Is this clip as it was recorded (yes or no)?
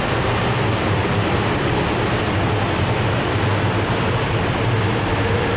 yes